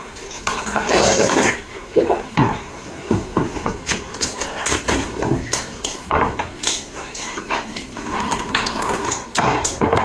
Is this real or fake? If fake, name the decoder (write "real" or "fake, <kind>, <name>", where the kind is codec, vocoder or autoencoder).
fake, codec, SNAC